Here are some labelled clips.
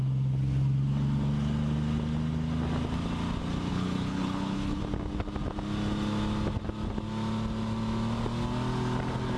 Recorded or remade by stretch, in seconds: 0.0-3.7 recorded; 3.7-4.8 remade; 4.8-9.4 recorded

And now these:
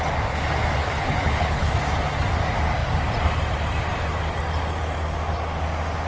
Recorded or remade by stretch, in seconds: 0.0-0.8 recorded; 0.8-1.7 remade; 1.7-6.1 recorded

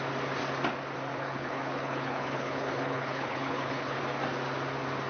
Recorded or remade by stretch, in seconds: 0.0-1.1 recorded; 1.1-4.0 remade; 4.0-5.1 recorded

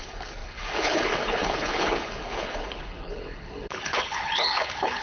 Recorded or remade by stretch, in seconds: 0.0-5.0 remade

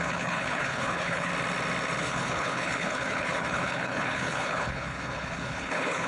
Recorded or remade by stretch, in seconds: 0.0-1.3 remade; 1.3-2.0 recorded; 2.0-6.1 remade